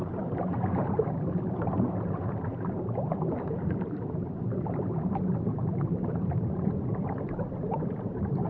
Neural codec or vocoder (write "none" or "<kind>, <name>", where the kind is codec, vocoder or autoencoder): vocoder, BigVGAN v2